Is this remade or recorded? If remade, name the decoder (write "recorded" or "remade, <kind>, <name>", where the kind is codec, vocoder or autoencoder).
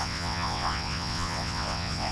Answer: remade, vocoder, WaveNeXt